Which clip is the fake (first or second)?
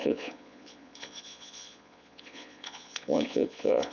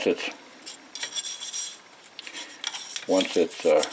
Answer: first